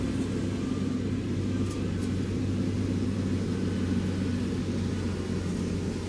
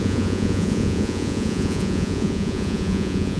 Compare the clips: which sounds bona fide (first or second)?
first